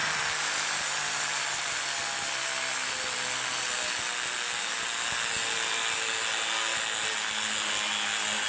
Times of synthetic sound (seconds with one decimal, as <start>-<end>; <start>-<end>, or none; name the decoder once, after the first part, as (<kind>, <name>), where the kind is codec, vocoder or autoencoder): none